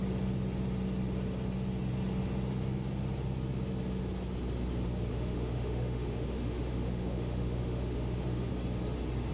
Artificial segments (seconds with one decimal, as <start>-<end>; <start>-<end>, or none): 5.1-8.5